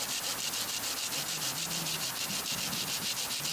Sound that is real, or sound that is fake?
real